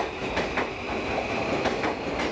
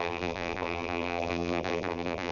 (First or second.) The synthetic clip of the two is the second